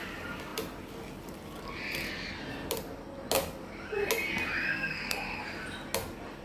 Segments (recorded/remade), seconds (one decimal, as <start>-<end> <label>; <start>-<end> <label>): 0.0-4.7 recorded; 4.7-5.4 remade; 5.4-6.4 recorded